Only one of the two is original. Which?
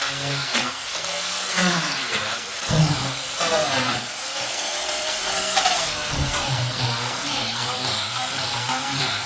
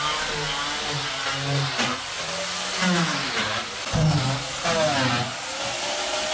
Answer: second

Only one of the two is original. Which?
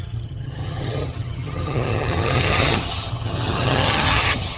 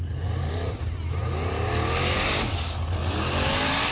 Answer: second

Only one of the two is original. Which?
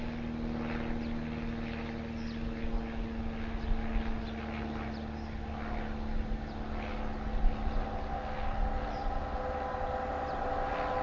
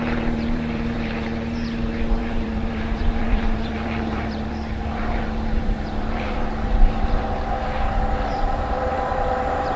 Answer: first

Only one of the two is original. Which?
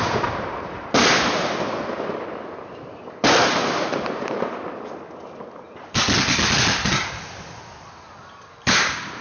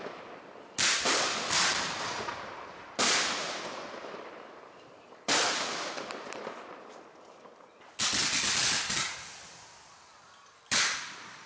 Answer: first